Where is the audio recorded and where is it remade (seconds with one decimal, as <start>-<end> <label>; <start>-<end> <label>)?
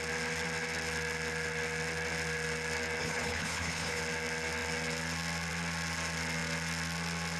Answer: 0.0-3.0 recorded; 3.0-4.0 remade; 4.0-7.4 recorded